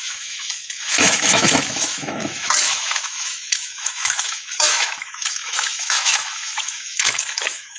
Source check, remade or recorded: remade